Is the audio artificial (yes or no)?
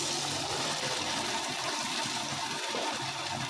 no